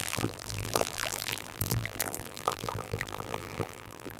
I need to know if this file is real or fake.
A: fake